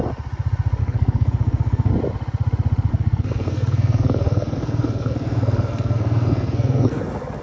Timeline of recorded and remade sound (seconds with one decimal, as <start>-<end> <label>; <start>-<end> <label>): 0.0-0.8 recorded; 0.8-1.9 remade; 1.9-2.9 recorded; 2.9-7.0 remade; 7.0-7.4 recorded